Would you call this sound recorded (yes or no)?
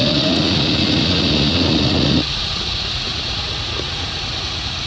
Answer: no